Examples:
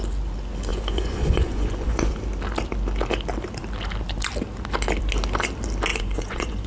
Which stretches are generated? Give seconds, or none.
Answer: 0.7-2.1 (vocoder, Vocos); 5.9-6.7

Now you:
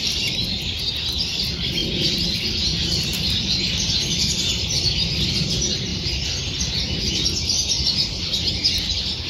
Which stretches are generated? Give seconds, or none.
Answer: none

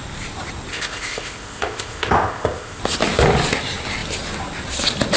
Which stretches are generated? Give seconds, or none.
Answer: 0.7-2.8 (codec, ZipCodec)